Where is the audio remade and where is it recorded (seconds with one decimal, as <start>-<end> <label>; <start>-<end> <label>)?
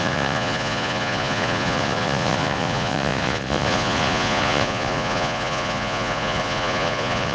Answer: 0.0-7.3 remade